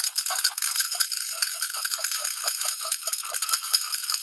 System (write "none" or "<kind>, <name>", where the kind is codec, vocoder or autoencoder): codec, SNAC